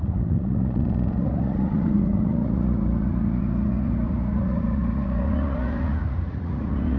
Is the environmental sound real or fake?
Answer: fake